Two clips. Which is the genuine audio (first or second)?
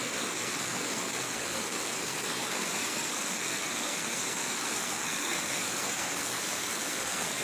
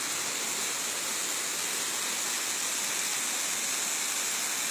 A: second